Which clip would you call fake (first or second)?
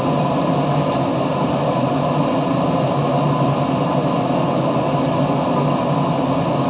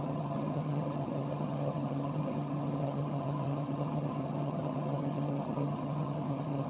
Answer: second